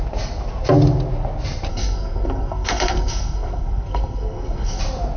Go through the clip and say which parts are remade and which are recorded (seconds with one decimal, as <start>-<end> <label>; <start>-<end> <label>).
0.0-1.7 recorded; 1.7-4.8 remade; 4.8-5.2 recorded